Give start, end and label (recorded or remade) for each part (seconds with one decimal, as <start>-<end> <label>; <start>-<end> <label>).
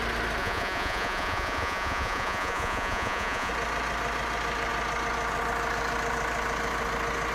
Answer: 0.0-0.4 recorded; 0.4-3.5 remade; 3.5-7.3 recorded